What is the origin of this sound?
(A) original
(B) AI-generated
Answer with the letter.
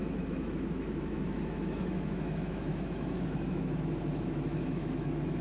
B